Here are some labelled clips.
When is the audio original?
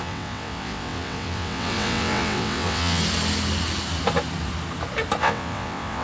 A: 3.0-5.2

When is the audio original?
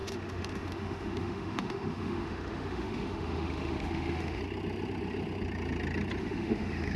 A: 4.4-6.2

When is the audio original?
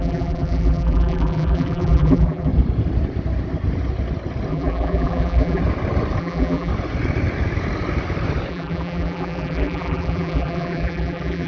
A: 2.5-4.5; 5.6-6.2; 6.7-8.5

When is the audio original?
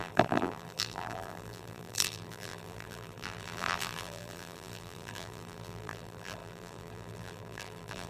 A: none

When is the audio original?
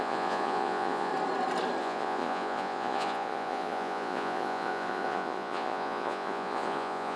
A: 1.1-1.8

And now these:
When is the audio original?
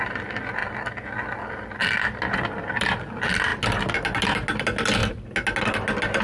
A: 0.0-6.2